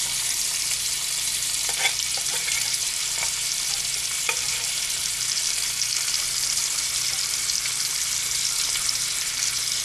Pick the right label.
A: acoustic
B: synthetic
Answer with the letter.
B